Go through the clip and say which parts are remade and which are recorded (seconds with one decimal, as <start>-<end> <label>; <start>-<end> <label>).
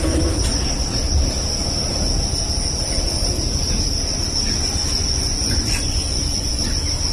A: 0.0-5.0 recorded; 5.0-6.6 remade; 6.6-7.1 recorded